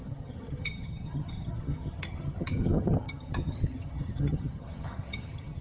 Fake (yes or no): yes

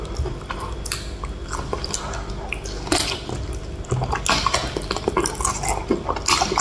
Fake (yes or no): no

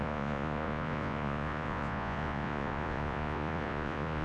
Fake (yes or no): yes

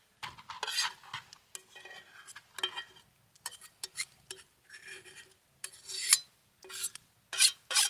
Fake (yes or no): no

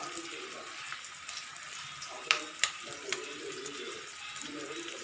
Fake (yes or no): yes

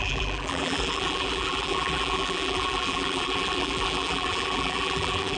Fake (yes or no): yes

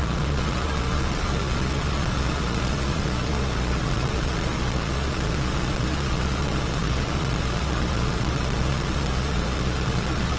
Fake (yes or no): yes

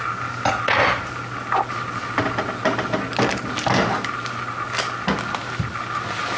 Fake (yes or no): no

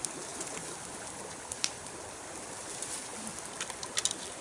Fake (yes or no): no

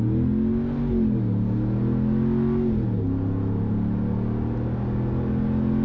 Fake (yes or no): no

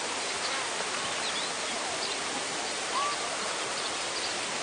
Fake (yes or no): no